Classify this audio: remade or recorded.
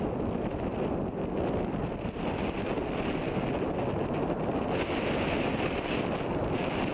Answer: recorded